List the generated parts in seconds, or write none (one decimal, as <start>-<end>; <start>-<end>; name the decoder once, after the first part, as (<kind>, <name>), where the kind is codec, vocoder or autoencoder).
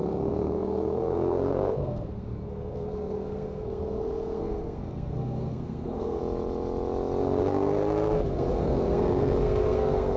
0.0-6.2 (codec, SNAC); 7.2-10.2